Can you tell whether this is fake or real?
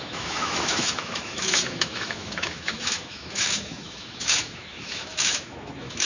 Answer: fake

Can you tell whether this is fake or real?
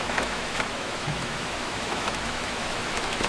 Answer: fake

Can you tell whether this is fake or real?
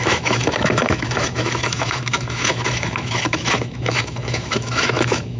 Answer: fake